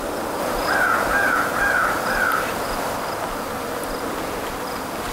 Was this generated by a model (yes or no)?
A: no